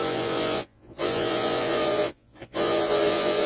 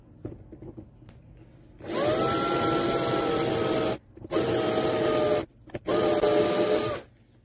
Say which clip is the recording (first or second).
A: second